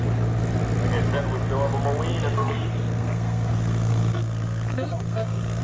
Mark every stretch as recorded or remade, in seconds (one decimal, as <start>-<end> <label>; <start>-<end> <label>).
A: 0.0-2.3 recorded; 2.3-5.6 remade